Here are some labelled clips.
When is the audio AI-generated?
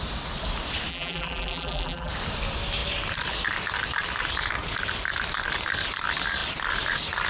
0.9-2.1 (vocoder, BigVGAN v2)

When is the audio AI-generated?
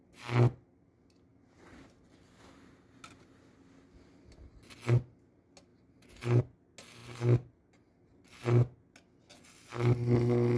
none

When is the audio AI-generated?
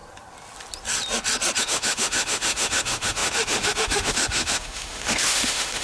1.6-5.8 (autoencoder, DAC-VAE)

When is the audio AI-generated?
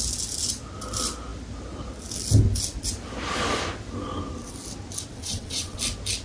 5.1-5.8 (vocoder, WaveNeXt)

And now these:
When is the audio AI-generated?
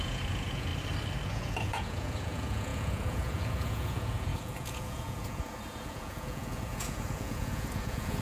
0.0-0.7 (vocoder, Vocos); 1.3-8.2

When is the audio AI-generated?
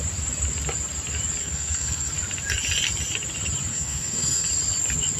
1.4-2.1 (codec, SNAC); 3.7-4.5